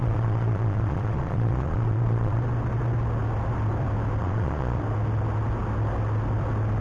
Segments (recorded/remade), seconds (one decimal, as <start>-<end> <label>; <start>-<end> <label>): 0.0-2.4 remade; 2.4-4.2 recorded; 4.2-4.8 remade; 4.8-6.8 recorded